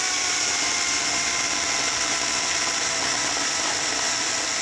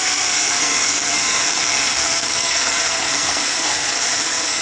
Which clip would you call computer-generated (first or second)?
second